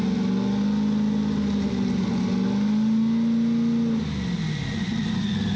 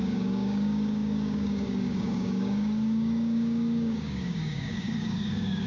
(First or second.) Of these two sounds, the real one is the first